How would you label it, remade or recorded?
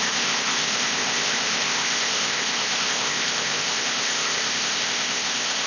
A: remade